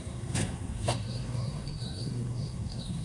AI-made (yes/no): yes